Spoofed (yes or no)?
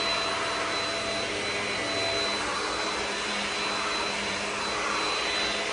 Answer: no